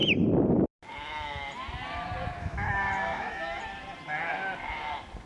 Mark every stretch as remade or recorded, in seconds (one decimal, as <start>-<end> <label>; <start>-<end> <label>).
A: 0.0-2.4 recorded; 2.4-3.6 remade; 3.6-5.3 recorded